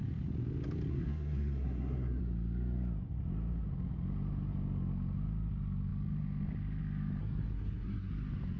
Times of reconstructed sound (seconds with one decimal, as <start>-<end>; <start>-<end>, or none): 0.9-2.2; 7.2-8.1

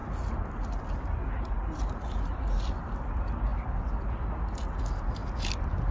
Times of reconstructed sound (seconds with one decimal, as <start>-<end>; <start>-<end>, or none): none

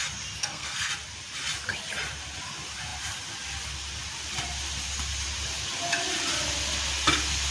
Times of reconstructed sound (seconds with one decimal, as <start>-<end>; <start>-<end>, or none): 0.4-0.9

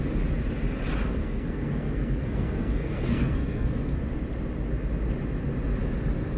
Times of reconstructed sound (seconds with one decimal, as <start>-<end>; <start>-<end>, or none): 1.2-4.0

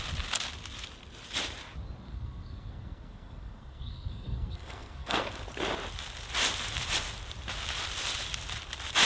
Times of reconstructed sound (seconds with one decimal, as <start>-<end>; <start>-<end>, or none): 2.1-5.3